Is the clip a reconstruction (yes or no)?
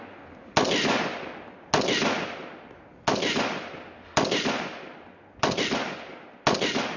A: no